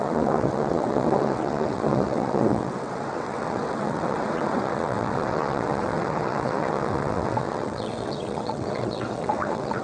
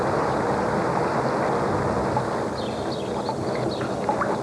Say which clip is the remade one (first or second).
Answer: first